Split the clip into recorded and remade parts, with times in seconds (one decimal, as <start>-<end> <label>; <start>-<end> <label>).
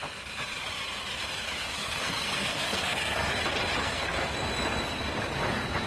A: 0.0-1.8 recorded; 1.8-3.3 remade; 3.3-3.8 recorded; 3.8-4.3 remade; 4.3-5.9 recorded